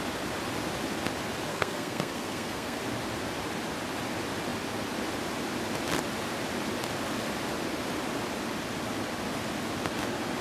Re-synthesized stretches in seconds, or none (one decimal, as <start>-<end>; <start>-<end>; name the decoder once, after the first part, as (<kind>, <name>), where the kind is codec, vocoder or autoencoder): 1.5-2.8 (codec, SNAC)